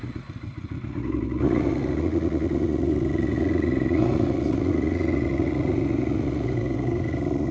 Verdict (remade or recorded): remade